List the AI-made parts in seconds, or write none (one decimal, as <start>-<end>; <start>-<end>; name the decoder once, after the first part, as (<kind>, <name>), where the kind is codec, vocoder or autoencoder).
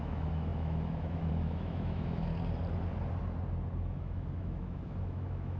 0.0-2.3 (autoencoder, DAC-VAE); 3.9-5.6